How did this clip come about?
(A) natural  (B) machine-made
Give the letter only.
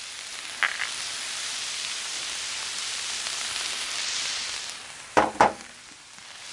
B